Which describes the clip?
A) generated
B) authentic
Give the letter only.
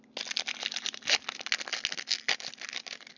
B